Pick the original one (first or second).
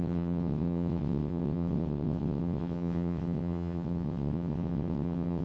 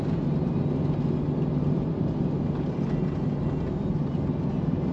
second